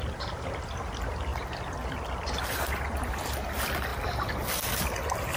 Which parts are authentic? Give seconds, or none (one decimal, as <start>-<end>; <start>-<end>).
0.0-1.3; 2.6-5.4